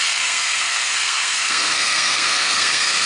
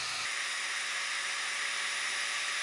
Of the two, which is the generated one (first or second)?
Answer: first